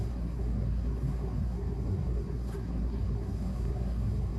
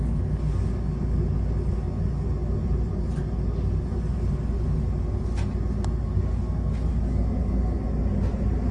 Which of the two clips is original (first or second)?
second